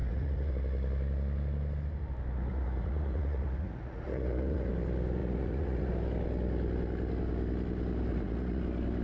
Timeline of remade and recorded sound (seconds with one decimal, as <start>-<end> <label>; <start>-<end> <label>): 0.0-0.5 remade; 0.5-2.5 recorded; 2.5-4.7 remade; 4.7-5.2 recorded; 5.2-5.9 remade; 5.9-8.1 recorded; 8.1-8.6 remade; 8.6-9.0 recorded